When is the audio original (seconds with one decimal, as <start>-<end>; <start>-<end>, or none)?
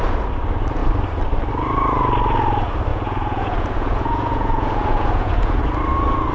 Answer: 0.0-2.9; 5.6-6.3